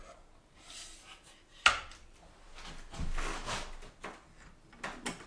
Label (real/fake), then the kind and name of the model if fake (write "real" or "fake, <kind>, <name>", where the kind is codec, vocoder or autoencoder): real